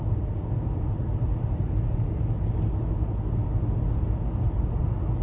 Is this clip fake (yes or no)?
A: no